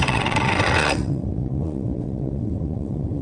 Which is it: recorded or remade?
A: remade